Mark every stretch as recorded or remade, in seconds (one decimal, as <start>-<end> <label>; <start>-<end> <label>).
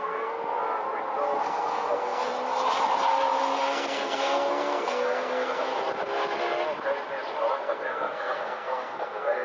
0.0-0.4 remade; 0.4-1.4 recorded; 1.4-2.3 remade; 2.3-3.6 recorded; 3.6-5.7 remade; 5.7-7.5 recorded; 7.5-9.4 remade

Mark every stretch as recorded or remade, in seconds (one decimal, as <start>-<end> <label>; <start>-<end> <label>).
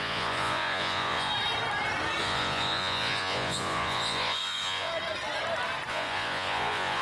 0.0-1.3 remade; 1.3-2.2 recorded; 2.2-4.9 remade; 4.9-5.9 recorded; 5.9-7.0 remade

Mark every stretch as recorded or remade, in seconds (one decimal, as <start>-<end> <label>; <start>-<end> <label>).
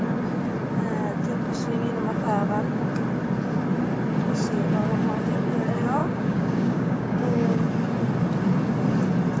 0.0-6.0 recorded; 6.0-7.6 remade; 7.6-9.4 recorded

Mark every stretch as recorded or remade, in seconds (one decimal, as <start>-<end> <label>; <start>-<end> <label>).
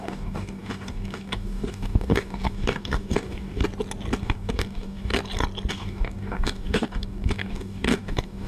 0.0-3.6 remade; 3.6-4.2 recorded; 4.2-5.1 remade; 5.1-5.7 recorded; 5.7-8.5 remade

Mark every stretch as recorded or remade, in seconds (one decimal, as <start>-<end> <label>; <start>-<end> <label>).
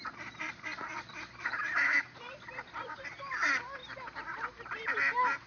0.0-0.9 remade; 0.9-1.6 recorded; 1.6-3.8 remade; 3.8-4.5 recorded; 4.5-5.5 remade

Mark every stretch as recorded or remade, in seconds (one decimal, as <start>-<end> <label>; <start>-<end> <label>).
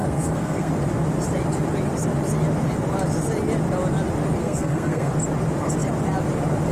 0.0-0.7 remade; 0.7-4.4 recorded; 4.4-5.1 remade; 5.1-6.7 recorded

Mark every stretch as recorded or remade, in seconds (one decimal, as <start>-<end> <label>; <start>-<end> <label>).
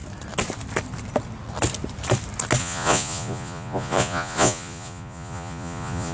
0.0-2.6 recorded; 2.6-6.1 remade